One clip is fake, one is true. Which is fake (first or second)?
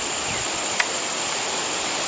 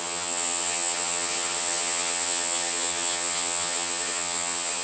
second